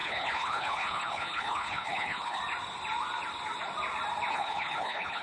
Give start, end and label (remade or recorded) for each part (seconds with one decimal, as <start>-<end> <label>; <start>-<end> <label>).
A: 0.0-2.4 remade; 2.4-4.3 recorded; 4.3-5.2 remade